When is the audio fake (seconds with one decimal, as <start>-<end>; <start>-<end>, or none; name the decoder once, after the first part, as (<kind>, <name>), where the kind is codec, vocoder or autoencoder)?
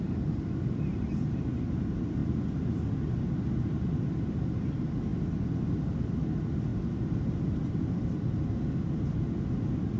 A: none